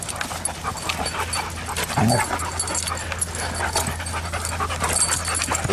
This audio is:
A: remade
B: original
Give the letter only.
B